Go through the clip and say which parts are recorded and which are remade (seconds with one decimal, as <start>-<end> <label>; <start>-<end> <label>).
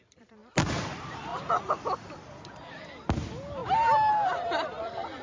0.0-1.3 remade; 1.3-2.7 recorded; 2.7-3.6 remade; 3.6-4.1 recorded; 4.1-5.2 remade